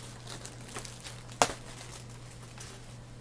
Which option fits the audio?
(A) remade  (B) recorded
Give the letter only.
B